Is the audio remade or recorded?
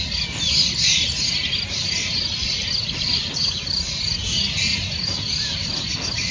recorded